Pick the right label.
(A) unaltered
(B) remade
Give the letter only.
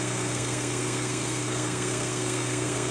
B